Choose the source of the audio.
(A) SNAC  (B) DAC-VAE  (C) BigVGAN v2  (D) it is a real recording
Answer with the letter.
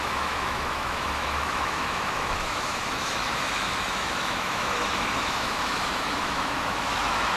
B